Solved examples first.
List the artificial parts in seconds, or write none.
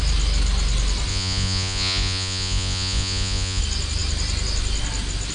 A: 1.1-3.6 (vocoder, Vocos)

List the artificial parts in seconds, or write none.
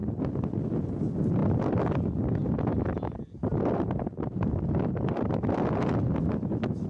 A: none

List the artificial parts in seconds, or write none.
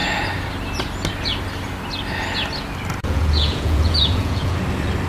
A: 3.0-4.6 (vocoder, Vocos)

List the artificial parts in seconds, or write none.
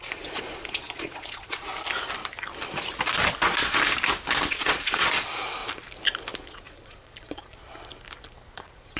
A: 0.0-1.7 (vocoder, Vocos); 4.5-5.6; 6.5-7.6; 8.5-9.0